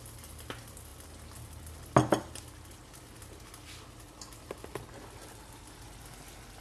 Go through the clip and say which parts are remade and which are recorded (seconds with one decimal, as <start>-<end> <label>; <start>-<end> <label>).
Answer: 0.0-6.6 recorded